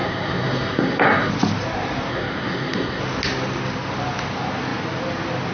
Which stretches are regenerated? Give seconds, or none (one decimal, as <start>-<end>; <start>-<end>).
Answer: 0.0-1.3; 2.1-3.0